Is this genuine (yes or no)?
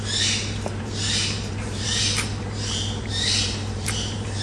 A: no